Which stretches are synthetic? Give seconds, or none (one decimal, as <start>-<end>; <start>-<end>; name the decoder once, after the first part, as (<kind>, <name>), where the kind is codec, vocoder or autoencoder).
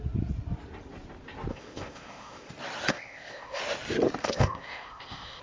1.5-2.5 (codec, ZipCodec); 2.9-3.6; 4.2-5.4